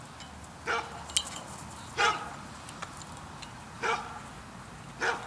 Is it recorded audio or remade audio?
recorded